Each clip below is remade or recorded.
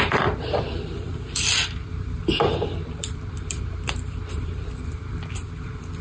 remade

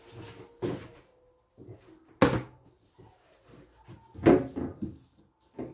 recorded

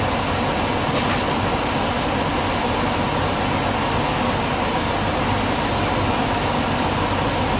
recorded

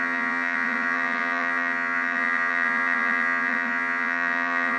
remade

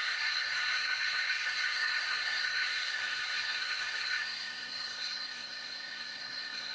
remade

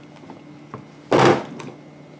recorded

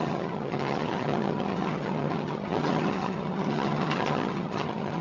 remade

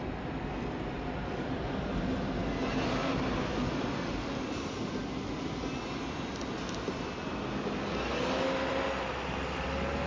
recorded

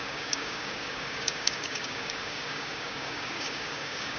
remade